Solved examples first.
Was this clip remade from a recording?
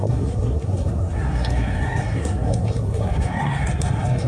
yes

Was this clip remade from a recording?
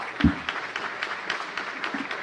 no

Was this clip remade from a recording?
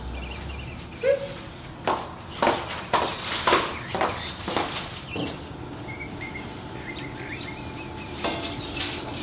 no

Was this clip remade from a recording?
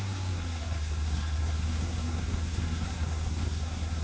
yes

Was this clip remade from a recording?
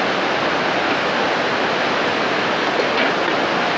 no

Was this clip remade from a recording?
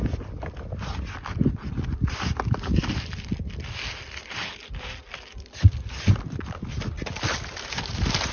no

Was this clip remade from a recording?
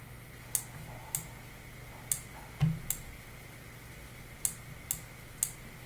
no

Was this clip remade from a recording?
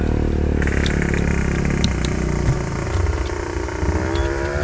no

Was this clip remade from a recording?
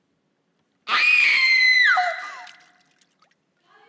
no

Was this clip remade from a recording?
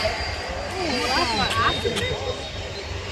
no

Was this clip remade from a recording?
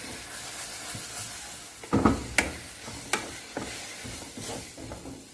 no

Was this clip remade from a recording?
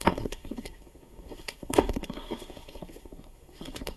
yes